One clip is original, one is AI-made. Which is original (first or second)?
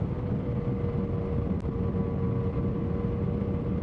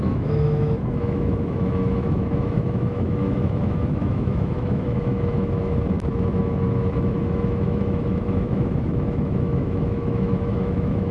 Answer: first